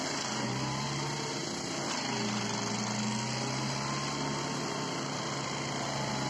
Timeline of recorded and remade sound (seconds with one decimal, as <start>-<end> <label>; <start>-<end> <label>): 0.0-6.3 recorded